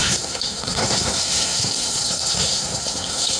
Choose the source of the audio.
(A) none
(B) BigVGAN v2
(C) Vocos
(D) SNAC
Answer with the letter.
D